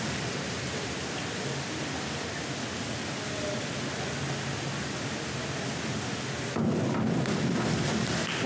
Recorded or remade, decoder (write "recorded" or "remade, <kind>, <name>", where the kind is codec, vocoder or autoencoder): recorded